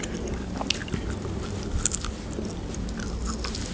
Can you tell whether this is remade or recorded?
recorded